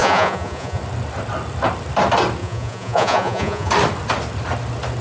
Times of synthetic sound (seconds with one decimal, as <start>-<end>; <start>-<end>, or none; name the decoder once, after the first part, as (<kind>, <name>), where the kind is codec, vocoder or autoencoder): 0.0-0.8 (vocoder, Vocos); 2.4-3.7